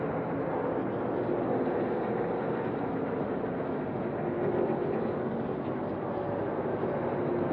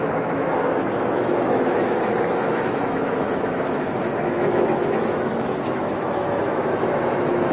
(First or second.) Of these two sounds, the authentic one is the first